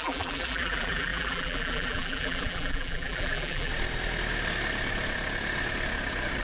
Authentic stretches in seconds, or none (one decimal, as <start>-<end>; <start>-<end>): 3.7-6.4